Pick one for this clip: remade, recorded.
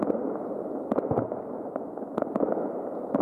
recorded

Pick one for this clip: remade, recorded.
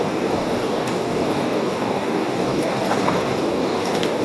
remade